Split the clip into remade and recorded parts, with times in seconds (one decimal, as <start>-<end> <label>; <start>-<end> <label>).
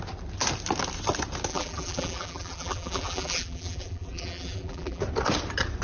0.0-1.5 recorded; 1.5-5.0 remade; 5.0-5.8 recorded